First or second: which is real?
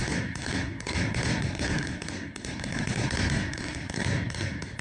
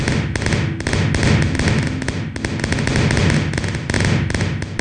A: second